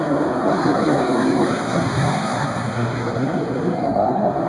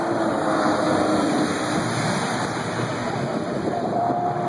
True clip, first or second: second